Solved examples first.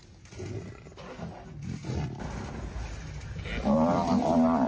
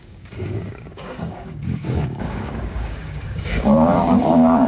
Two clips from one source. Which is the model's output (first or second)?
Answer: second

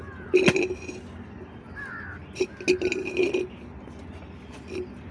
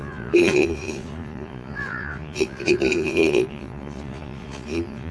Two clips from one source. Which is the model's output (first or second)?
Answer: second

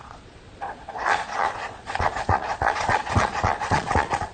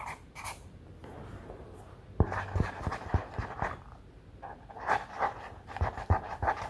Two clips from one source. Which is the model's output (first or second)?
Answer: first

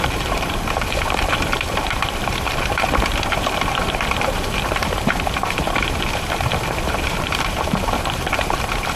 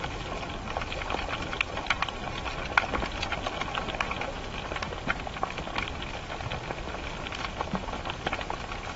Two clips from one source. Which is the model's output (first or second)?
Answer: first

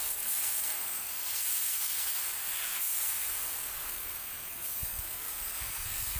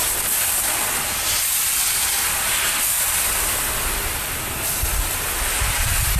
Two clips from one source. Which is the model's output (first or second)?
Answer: first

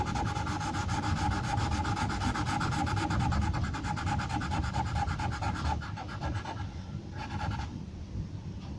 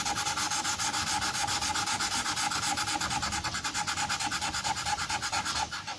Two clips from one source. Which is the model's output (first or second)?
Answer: first